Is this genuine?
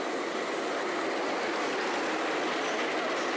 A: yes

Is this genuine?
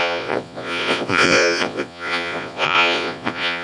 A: no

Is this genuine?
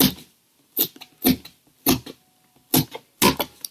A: yes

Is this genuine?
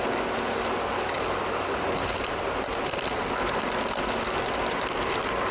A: yes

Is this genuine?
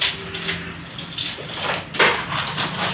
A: yes